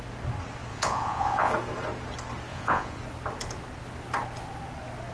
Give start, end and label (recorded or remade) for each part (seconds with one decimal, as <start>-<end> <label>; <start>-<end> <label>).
0.0-0.7 recorded; 0.7-1.5 remade; 1.5-2.5 recorded; 2.5-3.0 remade; 3.0-5.1 recorded